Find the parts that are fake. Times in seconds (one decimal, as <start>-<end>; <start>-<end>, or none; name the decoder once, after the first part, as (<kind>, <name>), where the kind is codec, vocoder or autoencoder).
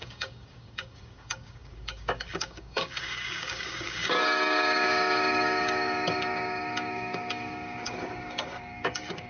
0.0-9.3 (codec, DAC)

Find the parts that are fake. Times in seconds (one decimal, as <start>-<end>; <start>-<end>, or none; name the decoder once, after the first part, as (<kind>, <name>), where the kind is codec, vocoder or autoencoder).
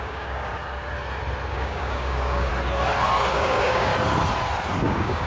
0.0-0.5 (codec, DAC); 1.5-2.5; 3.3-3.9; 4.8-5.3